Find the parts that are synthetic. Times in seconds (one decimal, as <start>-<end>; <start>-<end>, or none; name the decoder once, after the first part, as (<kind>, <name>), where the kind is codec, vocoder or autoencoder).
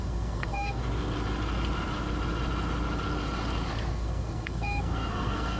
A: 0.0-0.8 (codec, SNAC); 3.9-5.6